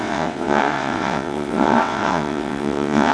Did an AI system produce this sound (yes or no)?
yes